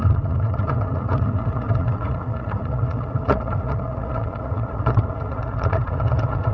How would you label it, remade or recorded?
remade